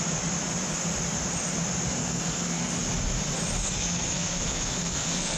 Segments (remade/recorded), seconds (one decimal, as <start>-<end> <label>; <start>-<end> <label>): 0.0-2.0 recorded; 2.0-2.7 remade; 2.7-3.6 recorded; 3.6-5.4 remade